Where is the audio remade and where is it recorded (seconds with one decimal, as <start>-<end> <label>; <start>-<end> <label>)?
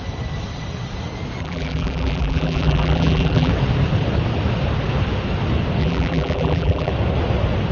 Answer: 0.0-1.4 recorded; 1.4-3.5 remade; 3.5-5.8 recorded; 5.8-6.9 remade; 6.9-7.7 recorded